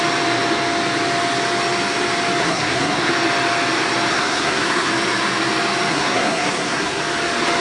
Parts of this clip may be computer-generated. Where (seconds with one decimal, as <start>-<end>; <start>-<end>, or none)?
2.4-3.1; 4.1-4.9; 5.9-7.0